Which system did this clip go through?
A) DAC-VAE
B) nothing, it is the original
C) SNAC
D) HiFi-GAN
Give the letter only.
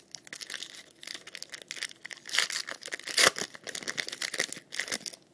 B